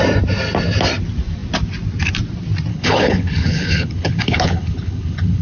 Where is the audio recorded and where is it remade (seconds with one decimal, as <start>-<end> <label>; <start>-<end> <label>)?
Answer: 0.0-2.7 recorded; 2.7-5.4 remade